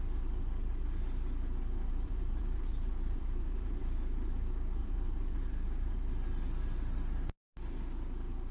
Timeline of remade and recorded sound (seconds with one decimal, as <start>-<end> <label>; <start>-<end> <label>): 0.0-1.9 recorded; 1.9-4.3 remade; 4.3-4.8 recorded; 4.8-6.1 remade; 6.1-8.5 recorded